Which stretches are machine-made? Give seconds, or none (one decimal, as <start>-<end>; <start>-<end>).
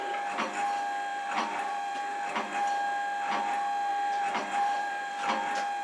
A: 1.1-2.0; 3.9-5.1